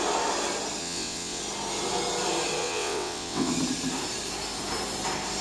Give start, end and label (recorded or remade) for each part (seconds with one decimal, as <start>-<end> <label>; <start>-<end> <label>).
0.0-0.8 recorded; 0.8-1.4 remade; 1.4-2.6 recorded; 2.6-3.5 remade; 3.5-5.4 recorded